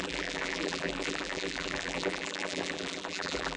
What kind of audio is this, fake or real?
fake